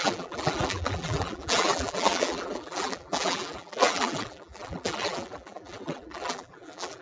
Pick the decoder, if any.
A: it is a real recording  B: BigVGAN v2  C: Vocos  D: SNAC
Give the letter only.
B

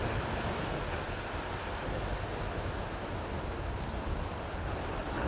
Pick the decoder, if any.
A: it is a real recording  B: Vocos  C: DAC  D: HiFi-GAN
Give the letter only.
A